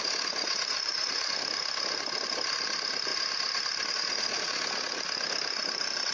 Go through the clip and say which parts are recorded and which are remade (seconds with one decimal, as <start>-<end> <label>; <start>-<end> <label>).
0.0-0.4 recorded; 0.4-1.3 remade; 1.3-6.1 recorded